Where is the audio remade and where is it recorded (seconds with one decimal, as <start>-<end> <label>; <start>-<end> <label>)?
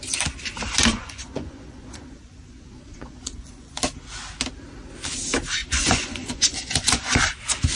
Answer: 0.0-0.9 recorded; 0.9-3.8 remade; 3.8-5.6 recorded; 5.6-7.2 remade; 7.2-7.8 recorded